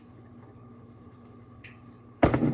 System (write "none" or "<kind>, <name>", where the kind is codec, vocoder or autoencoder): codec, HILCodec